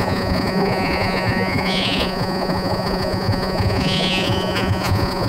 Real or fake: fake